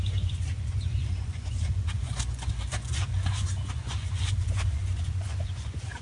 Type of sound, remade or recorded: remade